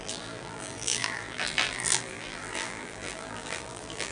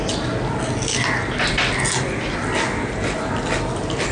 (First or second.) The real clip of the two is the second